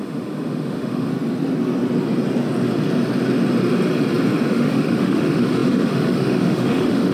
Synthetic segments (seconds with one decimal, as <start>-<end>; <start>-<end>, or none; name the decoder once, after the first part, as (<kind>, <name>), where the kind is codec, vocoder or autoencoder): 0.0-1.1 (autoencoder, DAC-VAE); 4.5-7.1